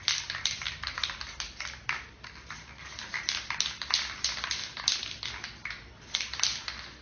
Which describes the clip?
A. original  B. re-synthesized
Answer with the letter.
A